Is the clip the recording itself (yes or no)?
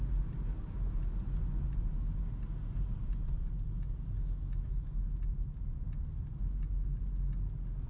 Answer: yes